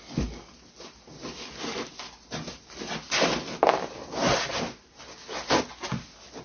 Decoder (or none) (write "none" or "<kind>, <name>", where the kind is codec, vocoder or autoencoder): none